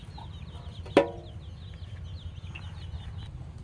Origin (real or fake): real